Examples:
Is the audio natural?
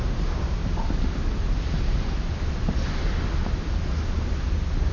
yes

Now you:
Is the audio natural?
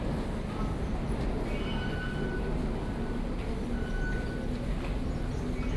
yes